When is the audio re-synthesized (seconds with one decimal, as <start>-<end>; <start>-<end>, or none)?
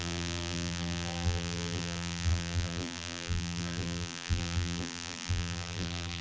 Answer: 0.0-6.2